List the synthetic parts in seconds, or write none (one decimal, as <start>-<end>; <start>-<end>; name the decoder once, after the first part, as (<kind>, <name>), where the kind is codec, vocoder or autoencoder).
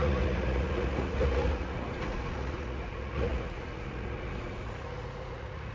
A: 0.0-5.7 (vocoder, Vocos)